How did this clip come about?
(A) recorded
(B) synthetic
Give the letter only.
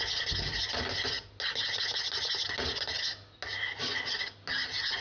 A